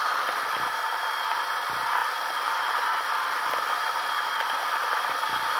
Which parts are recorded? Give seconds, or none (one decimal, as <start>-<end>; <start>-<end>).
none

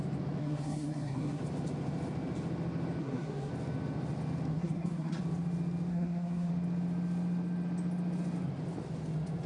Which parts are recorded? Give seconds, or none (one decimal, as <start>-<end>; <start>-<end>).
0.0-0.4; 1.4-3.0; 3.5-4.5; 5.2-5.9; 6.5-9.5